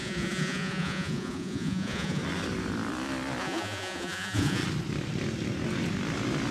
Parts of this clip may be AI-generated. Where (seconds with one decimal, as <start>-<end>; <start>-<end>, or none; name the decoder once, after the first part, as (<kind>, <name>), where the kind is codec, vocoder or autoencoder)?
0.0-2.2 (vocoder, Vocos); 3.4-4.6